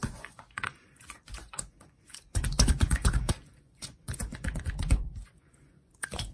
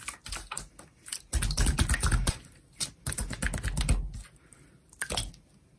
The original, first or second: second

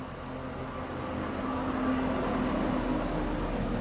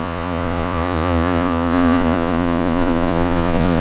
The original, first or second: first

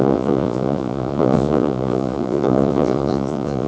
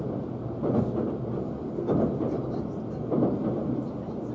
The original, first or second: second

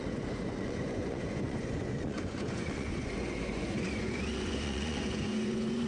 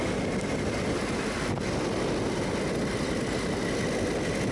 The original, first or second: second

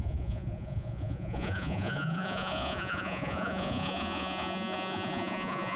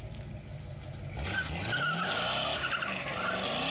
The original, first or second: second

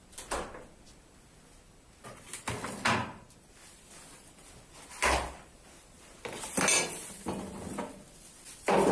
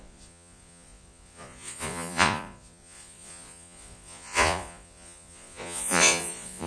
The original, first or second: first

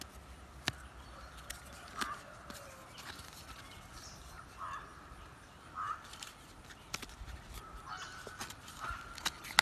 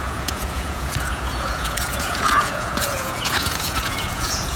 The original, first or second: first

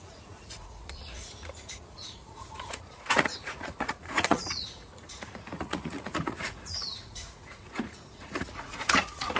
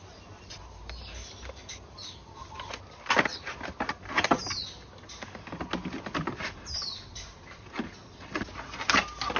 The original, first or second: second